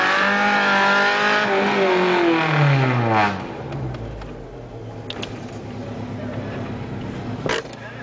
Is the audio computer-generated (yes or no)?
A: no